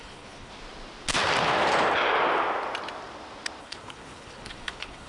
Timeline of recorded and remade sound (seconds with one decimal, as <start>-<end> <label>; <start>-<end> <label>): 0.0-0.5 remade; 0.5-3.6 recorded; 3.6-5.1 remade